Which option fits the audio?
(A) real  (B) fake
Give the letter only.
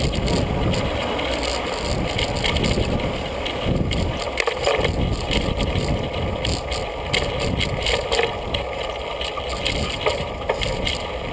A